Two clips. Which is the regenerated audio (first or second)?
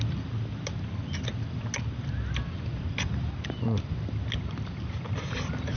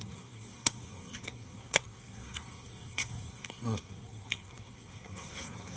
second